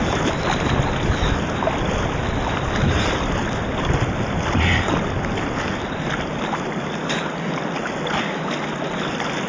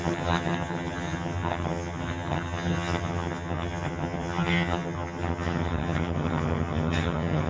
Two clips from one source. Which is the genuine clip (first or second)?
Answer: first